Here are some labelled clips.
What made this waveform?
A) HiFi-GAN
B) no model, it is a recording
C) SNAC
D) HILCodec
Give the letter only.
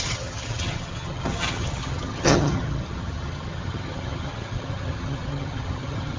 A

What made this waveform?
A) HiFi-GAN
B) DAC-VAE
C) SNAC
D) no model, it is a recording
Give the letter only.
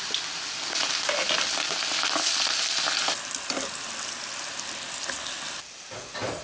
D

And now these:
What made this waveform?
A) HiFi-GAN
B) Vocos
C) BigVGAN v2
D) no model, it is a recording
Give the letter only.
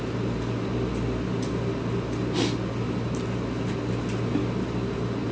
D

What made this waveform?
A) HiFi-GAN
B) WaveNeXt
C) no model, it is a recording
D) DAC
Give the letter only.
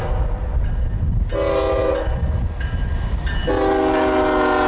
C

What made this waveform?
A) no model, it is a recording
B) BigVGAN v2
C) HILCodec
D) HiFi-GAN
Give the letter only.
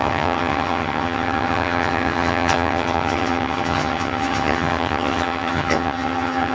D